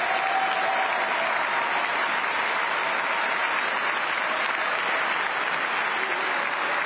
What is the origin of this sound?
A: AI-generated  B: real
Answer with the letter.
B